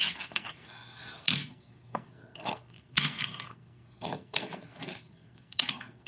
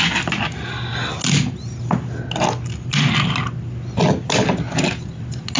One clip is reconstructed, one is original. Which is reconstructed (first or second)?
first